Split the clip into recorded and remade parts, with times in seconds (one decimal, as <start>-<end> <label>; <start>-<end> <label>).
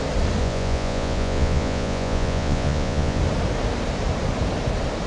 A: 0.0-0.4 recorded; 0.4-3.2 remade; 3.2-5.1 recorded